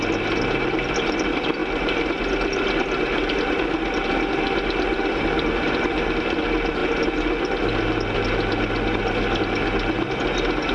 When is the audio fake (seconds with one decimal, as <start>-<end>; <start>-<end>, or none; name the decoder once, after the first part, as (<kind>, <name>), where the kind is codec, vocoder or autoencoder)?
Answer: none